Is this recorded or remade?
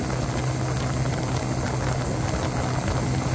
recorded